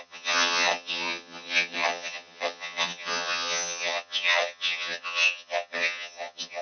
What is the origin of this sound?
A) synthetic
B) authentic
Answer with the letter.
A